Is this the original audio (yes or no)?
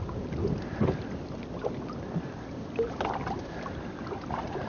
yes